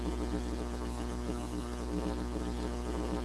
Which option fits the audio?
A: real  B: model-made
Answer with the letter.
B